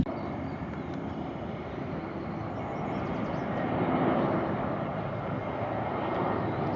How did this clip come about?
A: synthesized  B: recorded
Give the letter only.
B